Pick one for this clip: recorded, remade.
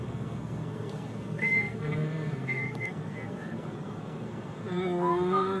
remade